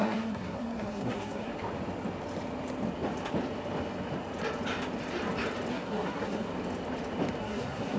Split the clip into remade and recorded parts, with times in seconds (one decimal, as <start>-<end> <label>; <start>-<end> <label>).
0.0-1.5 remade; 1.5-5.7 recorded; 5.7-6.5 remade; 6.5-7.4 recorded; 7.4-8.0 remade